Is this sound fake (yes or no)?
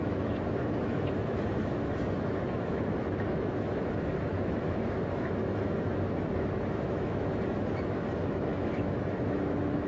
yes